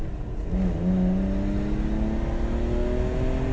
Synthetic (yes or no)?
no